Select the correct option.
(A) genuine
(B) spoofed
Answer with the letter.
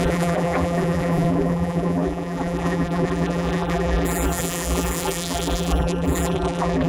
B